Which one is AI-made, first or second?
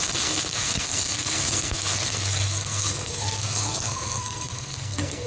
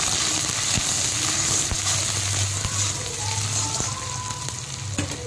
first